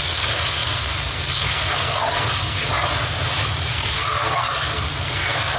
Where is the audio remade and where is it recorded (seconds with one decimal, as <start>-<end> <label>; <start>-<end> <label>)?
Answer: 0.0-2.7 remade; 2.7-3.7 recorded; 3.7-5.6 remade